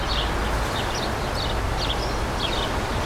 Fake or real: real